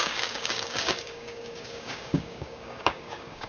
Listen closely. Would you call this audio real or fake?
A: fake